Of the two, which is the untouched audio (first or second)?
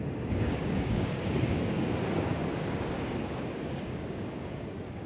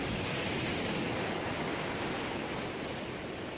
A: second